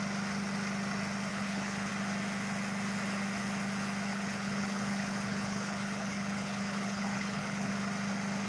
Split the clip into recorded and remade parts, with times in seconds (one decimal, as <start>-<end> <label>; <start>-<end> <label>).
0.0-1.3 recorded; 1.3-1.9 remade; 1.9-4.1 recorded; 4.1-7.7 remade; 7.7-8.5 recorded